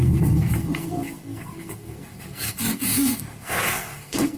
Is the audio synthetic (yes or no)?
yes